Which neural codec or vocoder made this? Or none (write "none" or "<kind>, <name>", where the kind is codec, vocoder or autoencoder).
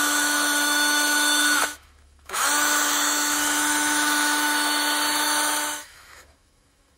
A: autoencoder, DAC-VAE